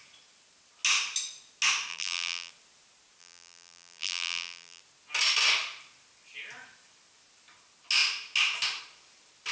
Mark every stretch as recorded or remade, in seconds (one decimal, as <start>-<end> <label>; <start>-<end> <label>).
0.0-1.9 recorded; 1.9-2.5 remade; 2.5-3.2 recorded; 3.2-4.8 remade; 4.8-9.5 recorded